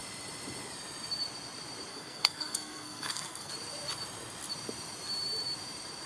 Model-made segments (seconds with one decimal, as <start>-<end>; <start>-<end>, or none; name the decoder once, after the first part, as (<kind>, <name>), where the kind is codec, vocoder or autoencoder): 1.9-3.5 (codec, SNAC)